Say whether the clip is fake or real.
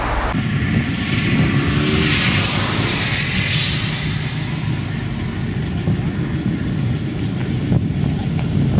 real